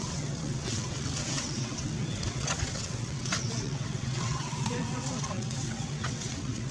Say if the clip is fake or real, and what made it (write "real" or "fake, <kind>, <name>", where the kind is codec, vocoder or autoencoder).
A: fake, vocoder, WaveNeXt